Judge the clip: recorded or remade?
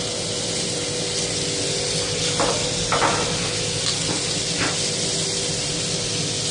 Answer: recorded